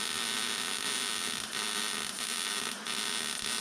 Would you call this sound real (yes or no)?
yes